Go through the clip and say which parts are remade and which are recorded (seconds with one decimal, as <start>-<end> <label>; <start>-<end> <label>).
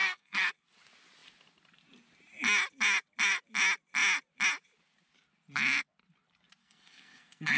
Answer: 0.0-0.5 remade; 0.5-6.6 recorded; 6.6-7.6 remade